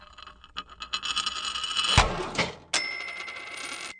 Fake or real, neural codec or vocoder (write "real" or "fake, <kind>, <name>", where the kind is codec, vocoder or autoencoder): real